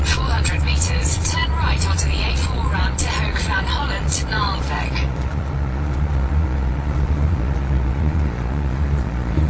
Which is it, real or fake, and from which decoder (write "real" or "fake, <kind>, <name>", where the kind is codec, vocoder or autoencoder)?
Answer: fake, vocoder, Vocos